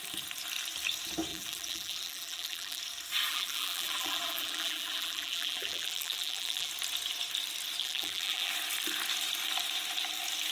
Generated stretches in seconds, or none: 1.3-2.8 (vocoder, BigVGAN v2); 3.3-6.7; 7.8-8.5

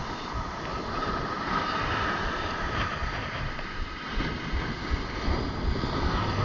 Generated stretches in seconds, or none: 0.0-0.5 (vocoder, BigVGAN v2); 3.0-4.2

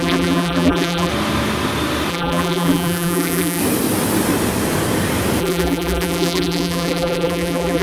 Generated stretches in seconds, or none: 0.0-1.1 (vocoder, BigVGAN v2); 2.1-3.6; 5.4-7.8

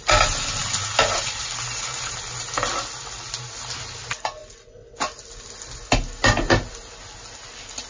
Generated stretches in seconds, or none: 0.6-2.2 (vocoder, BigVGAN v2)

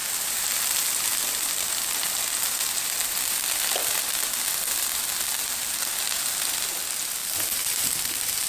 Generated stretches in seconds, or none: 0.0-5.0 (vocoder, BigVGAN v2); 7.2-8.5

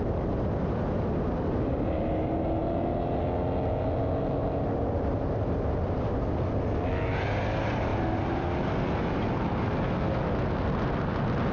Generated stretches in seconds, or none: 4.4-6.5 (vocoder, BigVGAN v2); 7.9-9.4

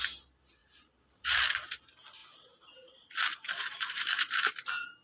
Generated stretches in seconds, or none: 0.6-1.5 (vocoder, BigVGAN v2); 2.2-4.5

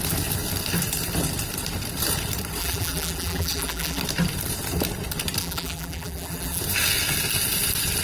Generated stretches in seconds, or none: 2.6-4.0 (vocoder, BigVGAN v2); 5.4-6.6